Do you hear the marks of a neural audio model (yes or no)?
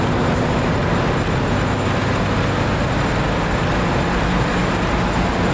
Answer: no